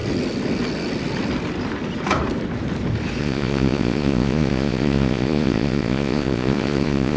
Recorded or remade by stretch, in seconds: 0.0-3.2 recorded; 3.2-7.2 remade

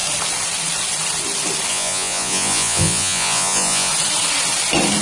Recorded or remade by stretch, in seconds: 0.0-1.7 recorded; 1.7-3.9 remade; 3.9-5.0 recorded

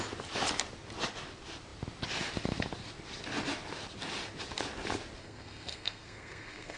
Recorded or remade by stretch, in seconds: 0.0-5.2 recorded; 5.2-6.8 remade

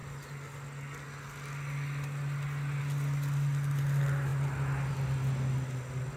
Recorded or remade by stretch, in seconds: 0.0-6.2 recorded